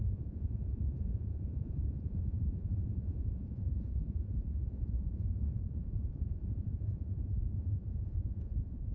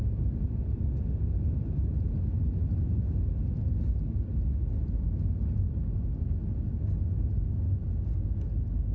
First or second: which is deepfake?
first